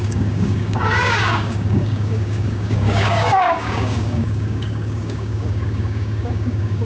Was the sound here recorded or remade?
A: remade